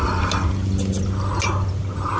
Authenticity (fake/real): real